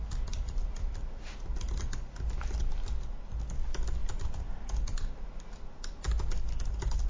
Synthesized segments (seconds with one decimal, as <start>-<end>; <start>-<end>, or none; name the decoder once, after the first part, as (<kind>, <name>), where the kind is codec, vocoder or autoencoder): none